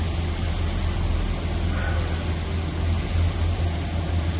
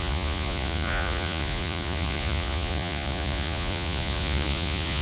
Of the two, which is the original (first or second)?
first